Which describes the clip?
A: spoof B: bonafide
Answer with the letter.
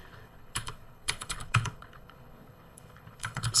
A